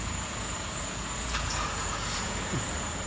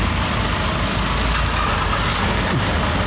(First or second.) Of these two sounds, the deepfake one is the first